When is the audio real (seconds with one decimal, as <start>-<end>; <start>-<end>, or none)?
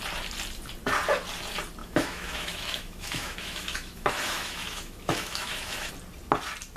0.0-1.8; 5.9-6.8